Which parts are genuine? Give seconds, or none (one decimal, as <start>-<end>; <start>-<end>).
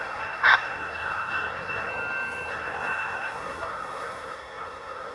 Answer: 1.9-2.5